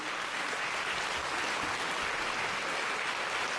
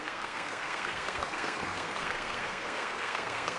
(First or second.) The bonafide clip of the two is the first